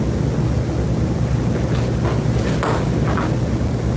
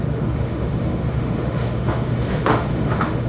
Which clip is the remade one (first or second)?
second